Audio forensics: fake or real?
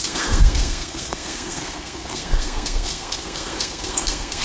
fake